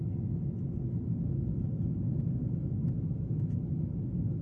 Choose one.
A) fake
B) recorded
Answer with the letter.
B